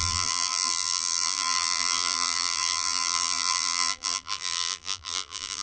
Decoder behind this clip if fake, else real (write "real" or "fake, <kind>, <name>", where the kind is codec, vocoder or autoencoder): fake, vocoder, BigVGAN v2